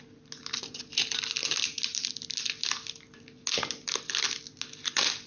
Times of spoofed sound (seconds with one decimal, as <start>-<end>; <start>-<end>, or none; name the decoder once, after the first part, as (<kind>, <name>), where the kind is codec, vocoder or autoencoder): none